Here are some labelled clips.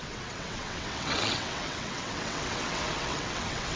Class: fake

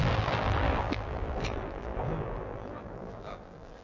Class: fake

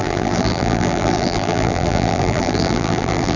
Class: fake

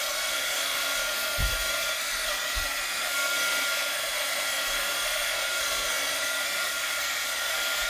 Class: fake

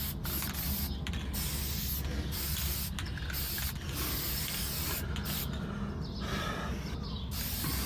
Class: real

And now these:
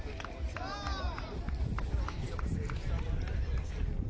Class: real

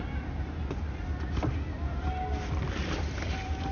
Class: real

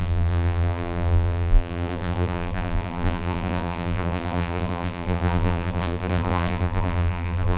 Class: fake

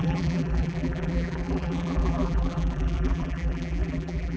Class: fake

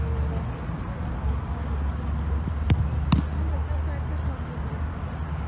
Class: real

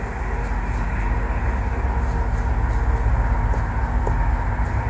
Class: real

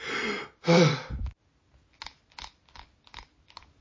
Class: real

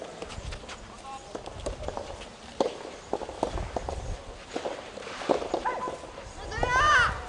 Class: fake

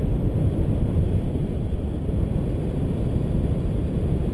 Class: real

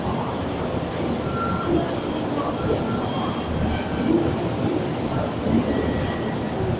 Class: real